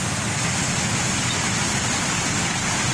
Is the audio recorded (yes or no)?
yes